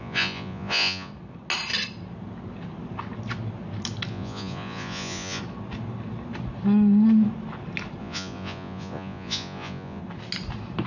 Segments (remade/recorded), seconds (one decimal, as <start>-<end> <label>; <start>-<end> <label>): 0.0-1.1 remade; 1.1-4.1 recorded; 4.1-5.4 remade; 5.4-8.0 recorded; 8.0-10.0 remade; 10.0-10.9 recorded